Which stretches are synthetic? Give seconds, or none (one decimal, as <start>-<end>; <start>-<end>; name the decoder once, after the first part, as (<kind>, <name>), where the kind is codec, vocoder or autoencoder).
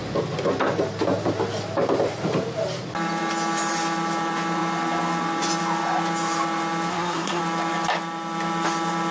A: 6.9-7.4 (codec, SNAC)